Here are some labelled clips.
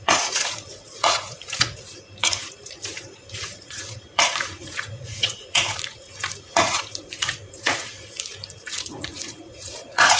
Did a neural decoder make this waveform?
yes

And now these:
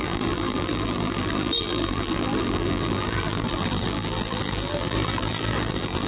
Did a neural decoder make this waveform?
yes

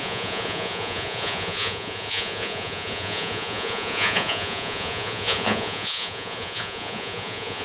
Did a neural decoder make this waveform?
yes